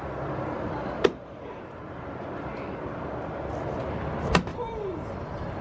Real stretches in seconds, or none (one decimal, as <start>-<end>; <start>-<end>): 0.0-4.5